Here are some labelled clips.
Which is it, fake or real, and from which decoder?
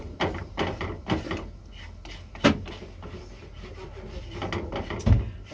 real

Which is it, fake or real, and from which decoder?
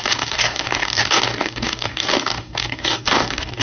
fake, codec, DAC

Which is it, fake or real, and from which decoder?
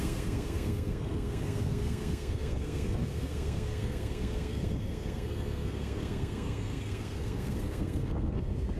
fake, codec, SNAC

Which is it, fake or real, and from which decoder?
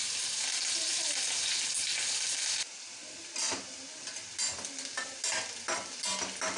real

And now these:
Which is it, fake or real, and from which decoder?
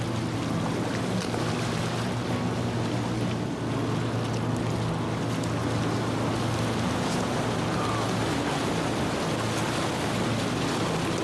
real